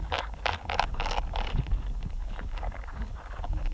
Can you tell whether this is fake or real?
fake